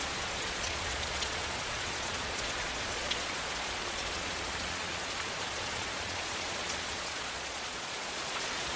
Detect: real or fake fake